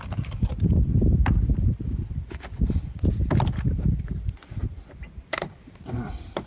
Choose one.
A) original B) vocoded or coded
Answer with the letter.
A